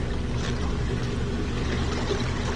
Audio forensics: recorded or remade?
recorded